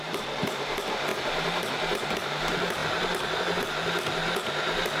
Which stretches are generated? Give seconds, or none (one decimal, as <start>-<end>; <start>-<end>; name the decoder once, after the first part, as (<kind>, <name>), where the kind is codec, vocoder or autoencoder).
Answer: 0.0-4.2 (vocoder, BigVGAN v2)